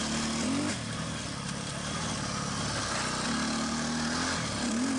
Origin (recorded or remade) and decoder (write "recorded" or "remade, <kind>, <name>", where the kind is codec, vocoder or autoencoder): recorded